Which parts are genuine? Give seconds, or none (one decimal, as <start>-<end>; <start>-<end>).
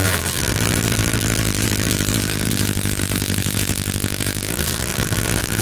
none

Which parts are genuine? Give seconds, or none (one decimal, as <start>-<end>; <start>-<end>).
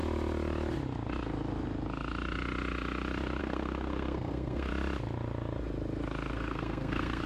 0.0-3.4; 4.7-6.3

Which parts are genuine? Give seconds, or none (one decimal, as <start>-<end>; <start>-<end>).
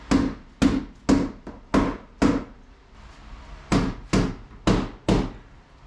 0.0-5.9